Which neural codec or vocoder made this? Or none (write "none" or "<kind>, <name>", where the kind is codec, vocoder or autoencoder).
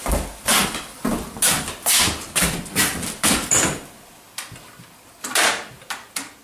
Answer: none